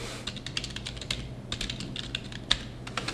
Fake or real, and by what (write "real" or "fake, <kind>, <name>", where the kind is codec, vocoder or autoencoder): real